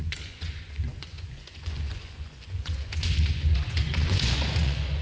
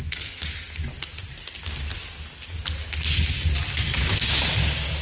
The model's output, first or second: first